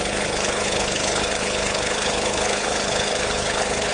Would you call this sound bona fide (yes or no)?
no